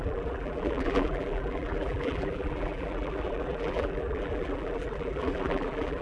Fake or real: fake